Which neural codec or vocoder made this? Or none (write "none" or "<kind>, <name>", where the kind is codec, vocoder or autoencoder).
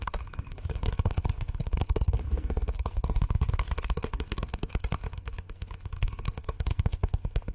codec, SNAC